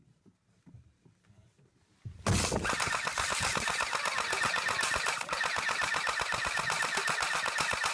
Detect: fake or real real